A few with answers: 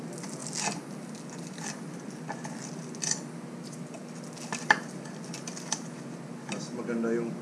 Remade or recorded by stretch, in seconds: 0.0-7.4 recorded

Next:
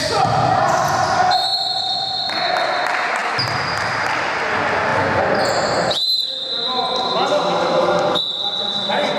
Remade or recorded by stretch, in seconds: 0.0-9.2 recorded

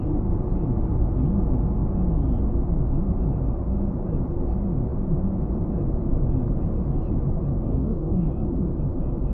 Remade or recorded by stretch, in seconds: 0.0-7.7 recorded; 7.7-8.3 remade; 8.3-9.3 recorded